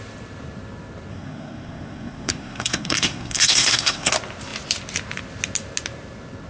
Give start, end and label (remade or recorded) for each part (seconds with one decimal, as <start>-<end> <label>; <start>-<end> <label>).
0.0-1.1 recorded; 1.1-4.1 remade; 4.1-6.5 recorded